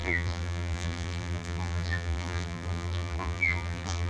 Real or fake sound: fake